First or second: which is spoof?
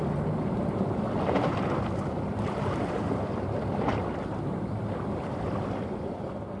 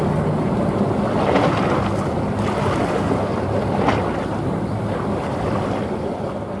first